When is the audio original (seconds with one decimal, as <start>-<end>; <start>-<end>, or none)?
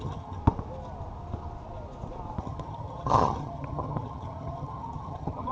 0.4-2.4